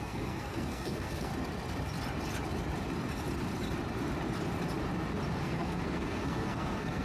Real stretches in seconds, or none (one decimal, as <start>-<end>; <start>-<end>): 1.3-5.4